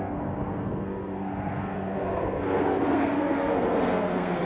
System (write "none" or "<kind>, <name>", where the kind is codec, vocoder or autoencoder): codec, SNAC